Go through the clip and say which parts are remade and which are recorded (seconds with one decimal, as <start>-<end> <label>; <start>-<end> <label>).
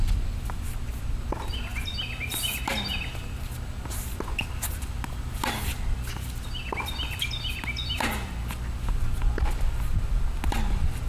0.0-11.1 recorded